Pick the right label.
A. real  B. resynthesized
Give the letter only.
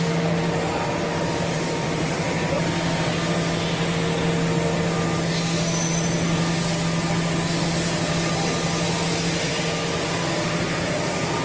A